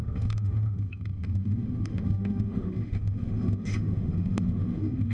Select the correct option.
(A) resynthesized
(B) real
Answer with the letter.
A